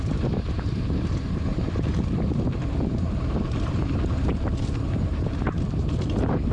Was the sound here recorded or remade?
remade